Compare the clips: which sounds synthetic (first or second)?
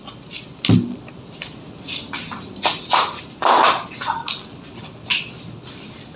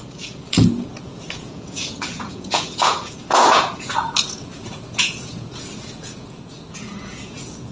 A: second